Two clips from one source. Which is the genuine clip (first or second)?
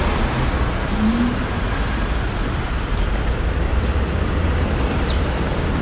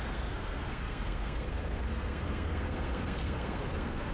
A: first